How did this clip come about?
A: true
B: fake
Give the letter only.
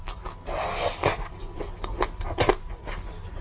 A